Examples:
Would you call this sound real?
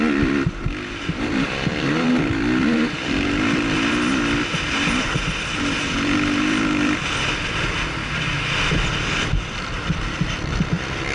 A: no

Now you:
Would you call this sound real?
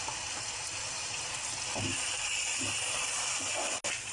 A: yes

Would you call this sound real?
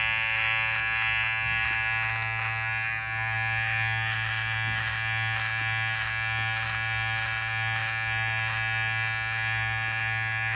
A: yes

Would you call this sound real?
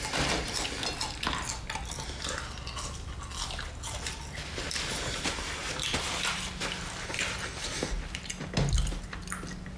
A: yes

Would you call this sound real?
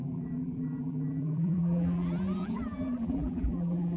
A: no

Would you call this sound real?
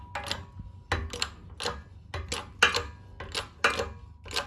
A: yes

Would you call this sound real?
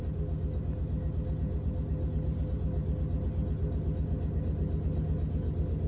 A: yes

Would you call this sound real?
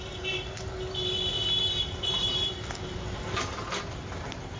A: yes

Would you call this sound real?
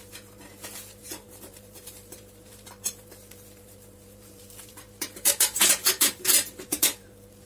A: no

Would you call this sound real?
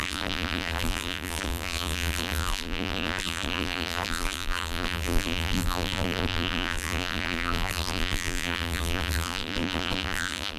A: no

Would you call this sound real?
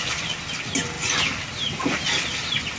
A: yes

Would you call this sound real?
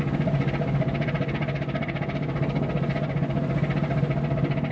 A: yes